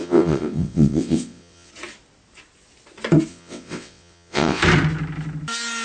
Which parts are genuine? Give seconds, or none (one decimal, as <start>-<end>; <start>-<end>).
1.7-3.3; 4.6-5.8